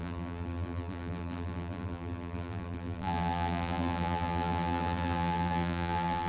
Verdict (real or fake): fake